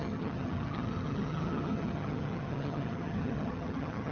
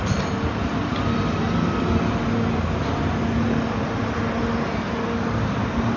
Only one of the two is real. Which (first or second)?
second